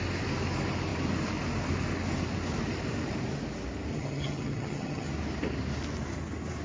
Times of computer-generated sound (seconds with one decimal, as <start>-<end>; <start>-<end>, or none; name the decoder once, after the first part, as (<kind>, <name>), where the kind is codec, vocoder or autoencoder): 3.9-5.1 (vocoder, HiFi-GAN)